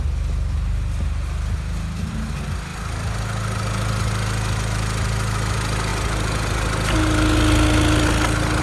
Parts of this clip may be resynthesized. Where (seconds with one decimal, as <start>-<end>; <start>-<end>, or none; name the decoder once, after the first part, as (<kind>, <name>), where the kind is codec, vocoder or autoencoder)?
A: none